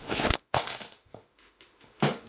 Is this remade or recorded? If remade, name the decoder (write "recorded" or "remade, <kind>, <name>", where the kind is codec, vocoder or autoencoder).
remade, autoencoder, DAC-VAE